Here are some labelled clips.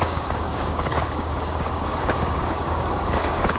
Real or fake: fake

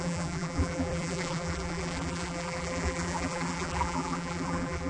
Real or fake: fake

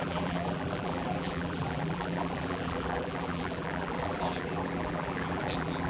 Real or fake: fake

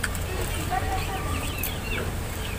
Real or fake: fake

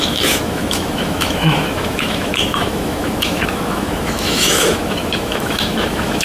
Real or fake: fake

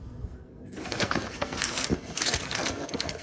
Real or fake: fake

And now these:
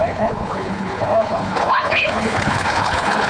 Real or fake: fake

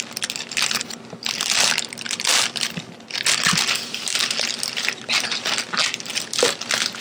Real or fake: real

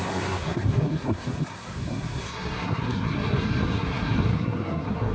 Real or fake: fake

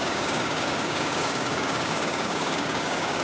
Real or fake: fake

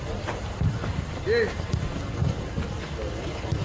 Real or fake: real